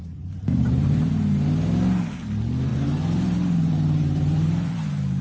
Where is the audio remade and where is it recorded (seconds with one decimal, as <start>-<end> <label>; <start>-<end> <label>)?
0.0-1.1 remade; 1.1-2.7 recorded; 2.7-5.2 remade